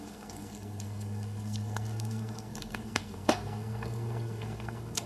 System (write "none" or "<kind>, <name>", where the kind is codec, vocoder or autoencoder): codec, SNAC